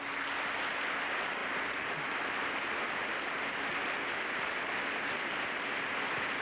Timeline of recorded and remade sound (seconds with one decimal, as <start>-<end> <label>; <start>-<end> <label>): 0.0-6.4 recorded